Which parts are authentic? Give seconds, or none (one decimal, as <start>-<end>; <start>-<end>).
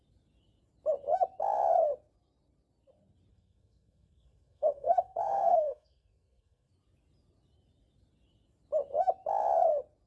0.0-3.3; 6.7-10.1